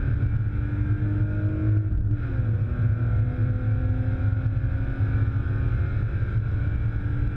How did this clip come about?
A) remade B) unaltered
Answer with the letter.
B